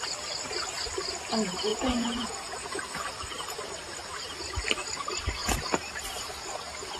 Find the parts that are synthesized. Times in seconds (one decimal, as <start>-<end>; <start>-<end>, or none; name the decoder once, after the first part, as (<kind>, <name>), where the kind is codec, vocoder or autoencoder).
1.7-3.0 (vocoder, Vocos)